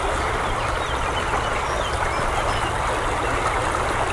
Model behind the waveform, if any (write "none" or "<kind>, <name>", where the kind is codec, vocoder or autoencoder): none